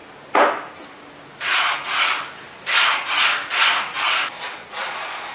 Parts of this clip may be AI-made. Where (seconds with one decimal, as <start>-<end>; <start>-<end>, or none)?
4.6-5.3